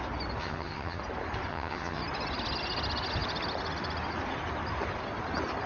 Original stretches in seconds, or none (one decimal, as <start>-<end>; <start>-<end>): 0.0-0.4; 1.0-1.5; 2.0-5.7